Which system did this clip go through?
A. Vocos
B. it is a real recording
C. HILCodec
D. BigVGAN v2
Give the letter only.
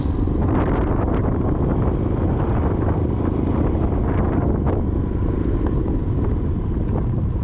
B